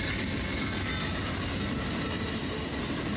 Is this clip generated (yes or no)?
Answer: no